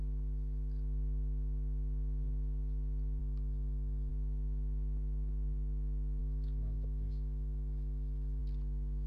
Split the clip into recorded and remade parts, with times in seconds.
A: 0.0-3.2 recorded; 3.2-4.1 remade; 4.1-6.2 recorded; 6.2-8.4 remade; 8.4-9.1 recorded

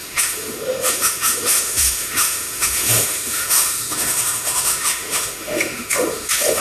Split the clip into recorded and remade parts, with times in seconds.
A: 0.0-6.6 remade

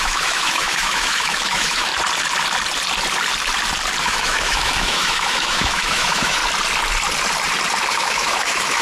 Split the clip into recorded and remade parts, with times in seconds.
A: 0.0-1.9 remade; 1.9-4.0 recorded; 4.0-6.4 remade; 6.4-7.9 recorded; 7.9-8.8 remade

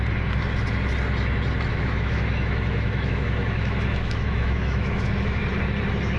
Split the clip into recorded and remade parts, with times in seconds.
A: 0.0-1.7 recorded; 1.7-5.4 remade; 5.4-6.2 recorded